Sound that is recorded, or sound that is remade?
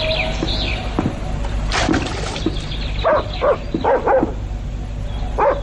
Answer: recorded